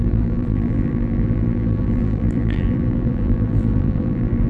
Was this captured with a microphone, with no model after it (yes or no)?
no